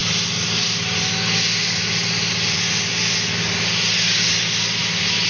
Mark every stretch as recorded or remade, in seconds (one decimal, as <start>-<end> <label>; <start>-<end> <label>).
0.0-5.3 recorded